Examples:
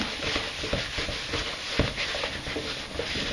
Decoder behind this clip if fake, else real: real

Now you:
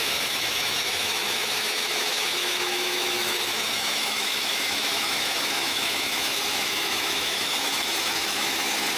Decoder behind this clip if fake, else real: fake, autoencoder, DAC-VAE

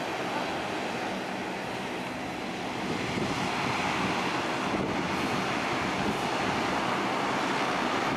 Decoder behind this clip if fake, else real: real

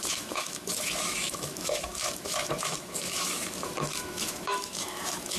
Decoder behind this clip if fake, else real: fake, autoencoder, DAC-VAE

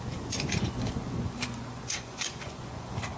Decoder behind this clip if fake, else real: fake, vocoder, Vocos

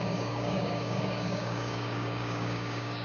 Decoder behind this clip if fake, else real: fake, codec, DAC